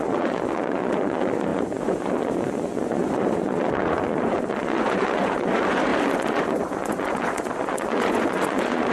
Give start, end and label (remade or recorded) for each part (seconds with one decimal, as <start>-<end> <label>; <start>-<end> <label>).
0.0-8.9 remade